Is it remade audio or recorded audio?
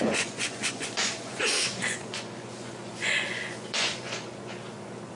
remade